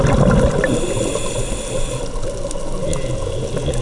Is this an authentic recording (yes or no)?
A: yes